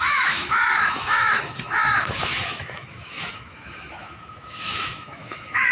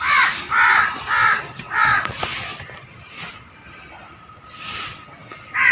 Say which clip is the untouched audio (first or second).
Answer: second